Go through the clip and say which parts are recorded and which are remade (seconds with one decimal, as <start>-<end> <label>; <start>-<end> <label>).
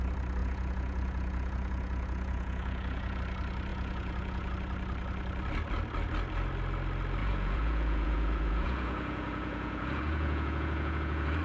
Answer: 0.0-0.4 recorded; 0.4-3.2 remade; 3.2-3.7 recorded; 3.7-4.5 remade; 4.5-7.2 recorded; 7.2-11.4 remade